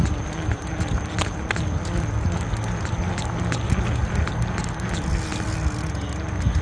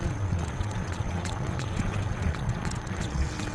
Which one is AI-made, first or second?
second